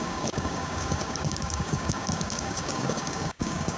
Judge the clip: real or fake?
fake